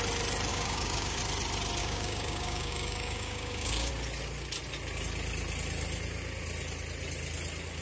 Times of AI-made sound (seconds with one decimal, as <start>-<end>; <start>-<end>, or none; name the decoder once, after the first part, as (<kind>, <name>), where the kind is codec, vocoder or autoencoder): 0.5-1.2 (codec, DAC); 1.8-3.9